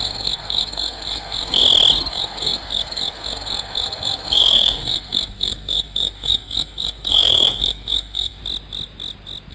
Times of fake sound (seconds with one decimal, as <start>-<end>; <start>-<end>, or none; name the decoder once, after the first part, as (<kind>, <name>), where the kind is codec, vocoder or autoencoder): 0.0-1.6 (codec, SNAC); 2.1-8.4